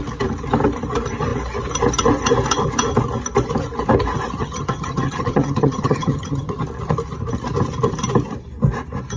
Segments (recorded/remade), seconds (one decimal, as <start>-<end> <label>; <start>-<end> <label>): 0.0-4.4 recorded; 4.4-6.6 remade; 6.6-9.2 recorded